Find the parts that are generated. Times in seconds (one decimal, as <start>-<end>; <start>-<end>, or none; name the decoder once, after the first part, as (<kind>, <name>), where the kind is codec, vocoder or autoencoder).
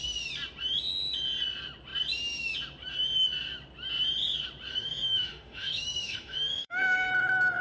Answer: 4.7-7.1 (autoencoder, DAC-VAE)